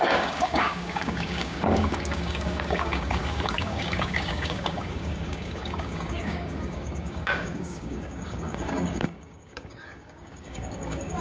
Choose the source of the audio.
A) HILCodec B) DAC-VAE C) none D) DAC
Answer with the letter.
D